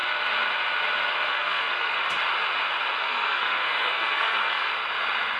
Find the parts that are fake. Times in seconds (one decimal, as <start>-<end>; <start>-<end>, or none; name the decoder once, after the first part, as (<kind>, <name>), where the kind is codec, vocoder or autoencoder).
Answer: 1.3-2.0 (codec, SNAC); 3.0-4.7